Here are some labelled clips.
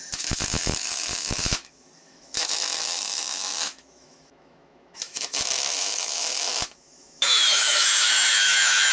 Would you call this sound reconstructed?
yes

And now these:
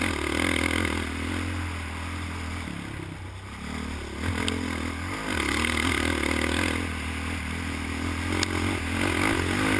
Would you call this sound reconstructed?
no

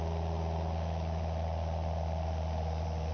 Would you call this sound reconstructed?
no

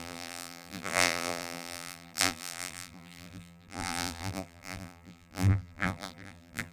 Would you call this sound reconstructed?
yes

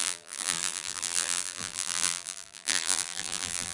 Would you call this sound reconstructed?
yes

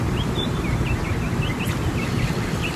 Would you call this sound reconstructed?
no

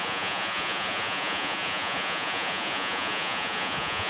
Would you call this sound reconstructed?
yes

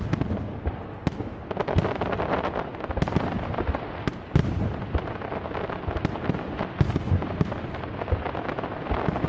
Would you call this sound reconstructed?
no